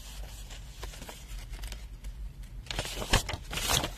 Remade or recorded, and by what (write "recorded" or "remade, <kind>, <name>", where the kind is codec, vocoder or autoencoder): recorded